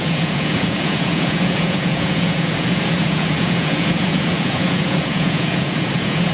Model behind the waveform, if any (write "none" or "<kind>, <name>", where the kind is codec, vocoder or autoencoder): vocoder, Vocos